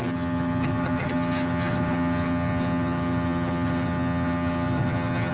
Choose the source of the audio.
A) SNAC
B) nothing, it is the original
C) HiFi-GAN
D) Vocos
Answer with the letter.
C